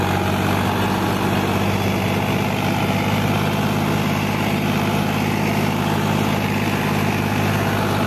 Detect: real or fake real